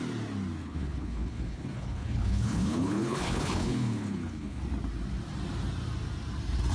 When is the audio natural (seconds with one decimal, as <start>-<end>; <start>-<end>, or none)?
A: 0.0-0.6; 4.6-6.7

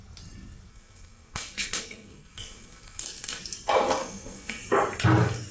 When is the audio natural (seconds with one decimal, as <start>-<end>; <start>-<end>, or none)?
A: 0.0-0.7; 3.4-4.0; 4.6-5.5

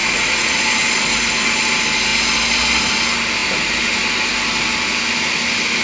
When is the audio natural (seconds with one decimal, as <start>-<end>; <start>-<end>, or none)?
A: 0.6-5.8

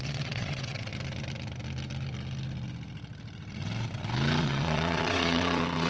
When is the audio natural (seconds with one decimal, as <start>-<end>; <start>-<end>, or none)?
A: 0.9-4.4

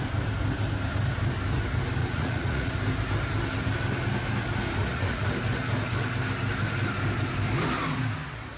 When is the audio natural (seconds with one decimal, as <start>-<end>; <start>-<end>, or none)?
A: 0.0-2.0; 2.7-4.8; 5.3-8.6

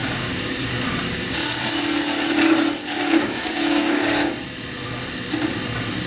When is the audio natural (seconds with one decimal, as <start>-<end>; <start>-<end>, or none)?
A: 1.6-2.8; 4.3-6.1